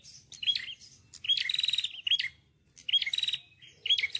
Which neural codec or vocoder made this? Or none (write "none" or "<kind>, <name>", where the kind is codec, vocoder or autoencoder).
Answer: none